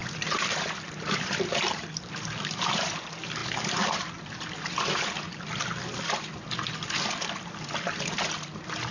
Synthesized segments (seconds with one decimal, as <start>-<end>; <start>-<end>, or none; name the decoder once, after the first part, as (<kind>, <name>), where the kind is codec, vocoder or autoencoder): 0.0-2.8 (vocoder, BigVGAN v2)